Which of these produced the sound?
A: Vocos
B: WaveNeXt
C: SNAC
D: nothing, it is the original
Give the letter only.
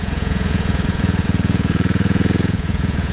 A